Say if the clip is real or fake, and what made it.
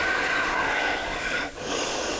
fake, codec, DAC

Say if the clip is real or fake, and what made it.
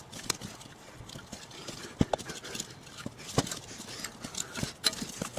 real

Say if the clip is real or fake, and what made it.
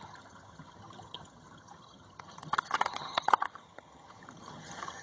fake, vocoder, HiFi-GAN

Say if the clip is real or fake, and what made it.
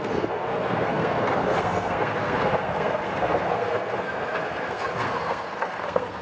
fake, codec, SNAC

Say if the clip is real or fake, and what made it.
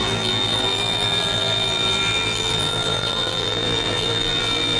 fake, vocoder, BigVGAN v2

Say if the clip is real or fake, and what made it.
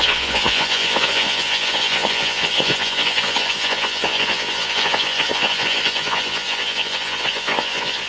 fake, vocoder, Vocos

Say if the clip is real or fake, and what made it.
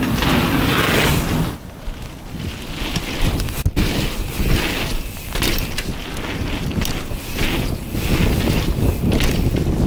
real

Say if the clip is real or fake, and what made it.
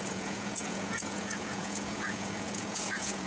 fake, vocoder, Vocos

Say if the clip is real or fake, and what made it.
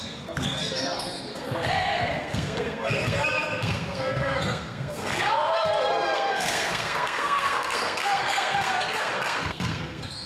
fake, codec, SNAC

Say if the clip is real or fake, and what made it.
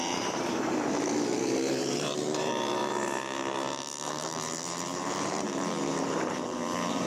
fake, vocoder, BigVGAN v2